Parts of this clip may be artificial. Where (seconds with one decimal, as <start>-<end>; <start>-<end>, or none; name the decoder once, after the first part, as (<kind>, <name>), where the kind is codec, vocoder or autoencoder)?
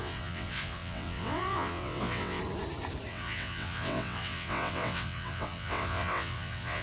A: 0.0-2.4 (vocoder, WaveNeXt); 3.1-6.8